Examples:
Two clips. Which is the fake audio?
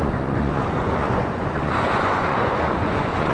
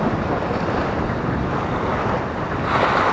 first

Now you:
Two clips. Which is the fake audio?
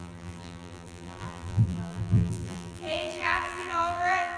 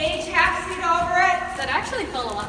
first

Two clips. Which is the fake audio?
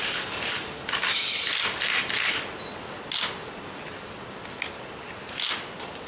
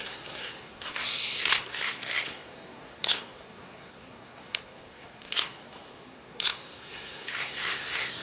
second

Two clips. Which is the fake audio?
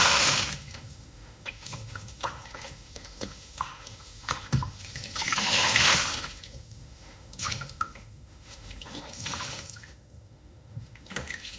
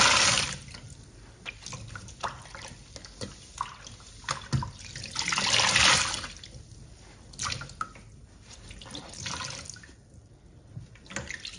first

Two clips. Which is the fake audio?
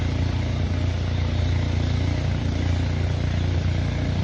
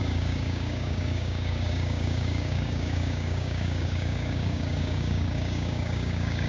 second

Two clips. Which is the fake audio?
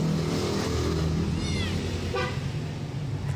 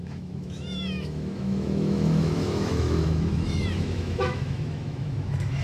second